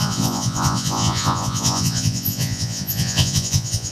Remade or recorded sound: remade